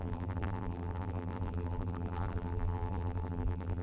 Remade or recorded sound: remade